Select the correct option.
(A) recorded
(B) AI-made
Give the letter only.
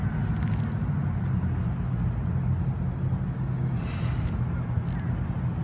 A